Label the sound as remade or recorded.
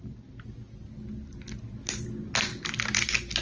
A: recorded